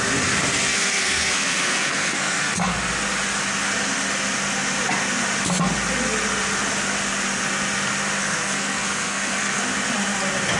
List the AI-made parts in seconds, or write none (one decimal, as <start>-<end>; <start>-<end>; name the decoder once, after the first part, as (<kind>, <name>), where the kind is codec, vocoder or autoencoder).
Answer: 0.7-2.5 (codec, SNAC); 8.2-9.6